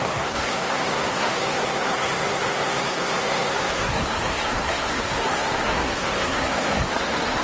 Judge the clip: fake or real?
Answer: fake